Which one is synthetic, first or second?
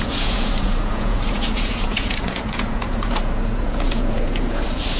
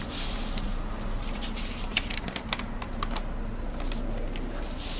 first